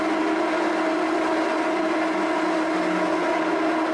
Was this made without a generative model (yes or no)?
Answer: yes